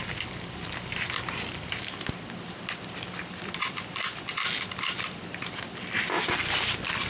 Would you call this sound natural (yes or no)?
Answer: no